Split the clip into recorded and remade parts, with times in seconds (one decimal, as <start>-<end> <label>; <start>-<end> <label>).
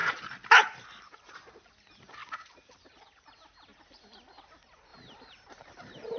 0.0-1.7 remade; 1.7-2.2 recorded; 2.2-2.7 remade; 2.7-4.9 recorded; 4.9-6.2 remade